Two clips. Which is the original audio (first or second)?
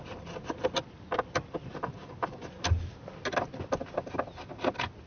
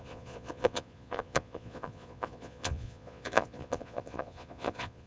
first